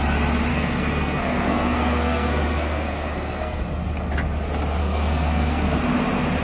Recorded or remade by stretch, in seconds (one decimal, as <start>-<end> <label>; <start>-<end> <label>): 0.0-0.5 recorded; 0.5-3.6 remade; 3.6-4.8 recorded; 4.8-5.8 remade; 5.8-6.4 recorded